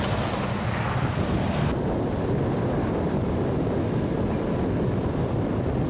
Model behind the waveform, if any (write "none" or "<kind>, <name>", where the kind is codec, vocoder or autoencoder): none